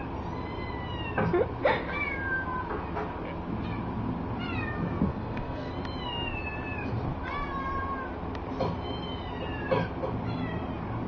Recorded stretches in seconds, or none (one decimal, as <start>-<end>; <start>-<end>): 0.0-5.1; 5.7-11.1